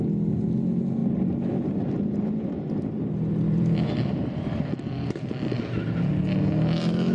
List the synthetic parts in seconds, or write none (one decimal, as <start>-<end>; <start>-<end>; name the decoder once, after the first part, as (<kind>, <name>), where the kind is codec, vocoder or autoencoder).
1.0-5.3 (vocoder, BigVGAN v2)